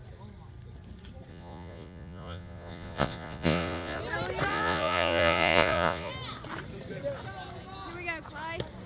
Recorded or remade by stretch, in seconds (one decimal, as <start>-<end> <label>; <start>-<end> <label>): 0.0-1.3 recorded; 1.3-4.0 remade; 4.0-4.5 recorded; 4.5-6.1 remade; 6.1-8.9 recorded